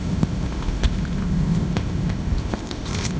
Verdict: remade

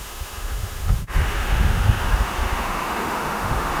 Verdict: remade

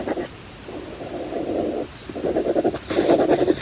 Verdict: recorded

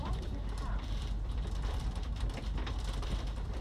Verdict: remade